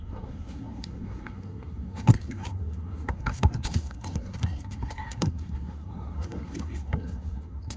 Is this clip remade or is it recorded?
remade